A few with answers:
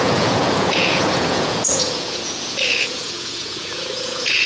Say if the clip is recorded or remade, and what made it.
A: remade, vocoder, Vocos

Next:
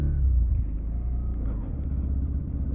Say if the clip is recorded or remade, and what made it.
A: recorded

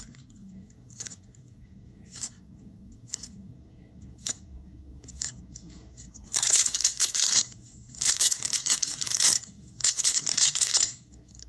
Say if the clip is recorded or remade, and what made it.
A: remade, codec, SNAC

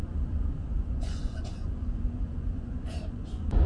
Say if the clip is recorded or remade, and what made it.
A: remade, vocoder, Vocos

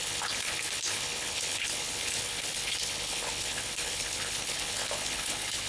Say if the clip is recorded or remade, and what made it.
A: remade, codec, HILCodec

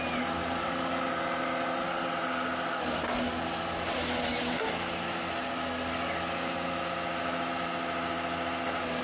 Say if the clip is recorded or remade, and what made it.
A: recorded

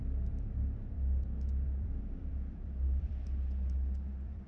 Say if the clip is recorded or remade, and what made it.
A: remade, vocoder, BigVGAN v2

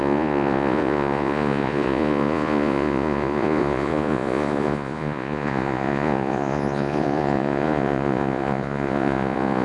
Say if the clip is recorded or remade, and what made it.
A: remade, vocoder, Vocos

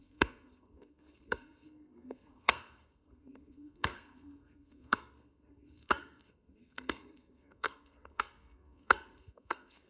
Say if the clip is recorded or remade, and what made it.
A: remade, codec, SNAC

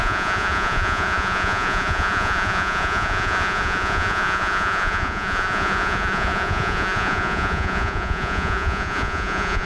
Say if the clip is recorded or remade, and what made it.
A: remade, vocoder, Vocos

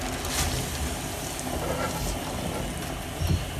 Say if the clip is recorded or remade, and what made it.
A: recorded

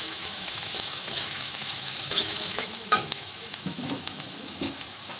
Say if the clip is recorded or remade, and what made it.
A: remade, autoencoder, DAC-VAE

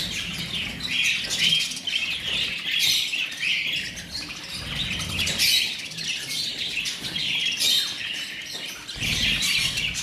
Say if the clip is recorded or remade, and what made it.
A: remade, vocoder, BigVGAN v2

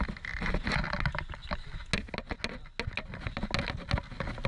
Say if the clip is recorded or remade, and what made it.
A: recorded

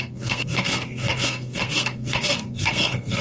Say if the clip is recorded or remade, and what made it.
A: remade, codec, SNAC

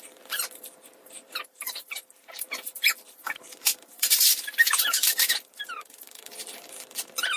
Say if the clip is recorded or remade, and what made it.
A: remade, vocoder, BigVGAN v2